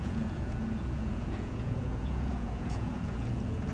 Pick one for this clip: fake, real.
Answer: fake